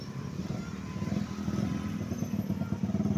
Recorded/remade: recorded